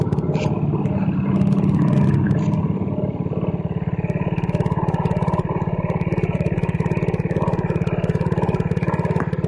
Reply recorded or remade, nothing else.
recorded